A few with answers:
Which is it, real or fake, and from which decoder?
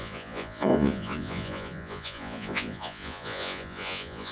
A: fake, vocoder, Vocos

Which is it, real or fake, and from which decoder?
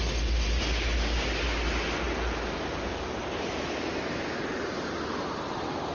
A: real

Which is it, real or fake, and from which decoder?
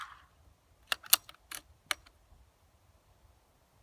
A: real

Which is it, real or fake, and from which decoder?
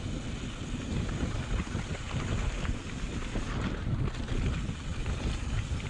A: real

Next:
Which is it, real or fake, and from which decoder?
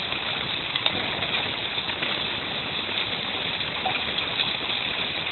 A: real